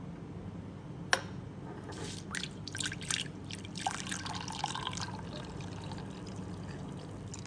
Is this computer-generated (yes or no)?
no